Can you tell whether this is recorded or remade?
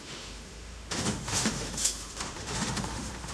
remade